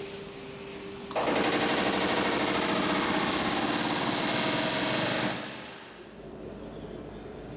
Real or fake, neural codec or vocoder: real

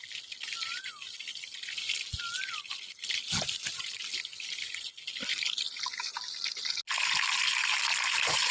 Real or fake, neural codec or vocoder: real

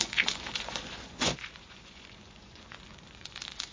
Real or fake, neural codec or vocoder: fake, vocoder, Vocos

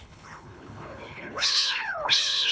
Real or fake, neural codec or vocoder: fake, codec, HILCodec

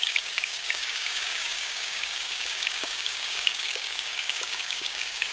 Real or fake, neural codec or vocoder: fake, codec, DAC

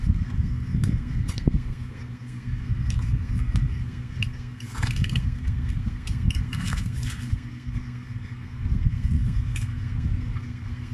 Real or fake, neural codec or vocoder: fake, codec, SNAC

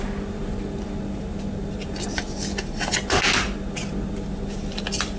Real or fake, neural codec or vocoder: real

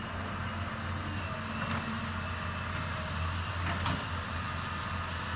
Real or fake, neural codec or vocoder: real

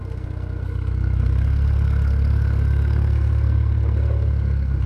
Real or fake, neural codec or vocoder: fake, codec, SNAC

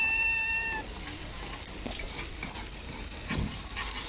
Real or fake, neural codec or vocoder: fake, vocoder, BigVGAN v2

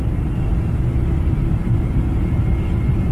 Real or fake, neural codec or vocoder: real